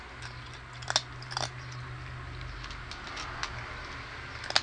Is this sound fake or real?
real